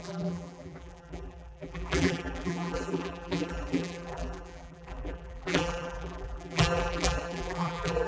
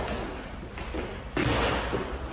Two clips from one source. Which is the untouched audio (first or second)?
second